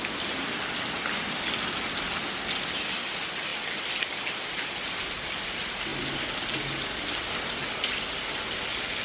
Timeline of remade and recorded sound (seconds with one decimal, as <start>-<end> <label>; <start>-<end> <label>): 0.0-9.0 recorded